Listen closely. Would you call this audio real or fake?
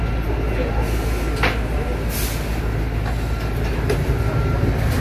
real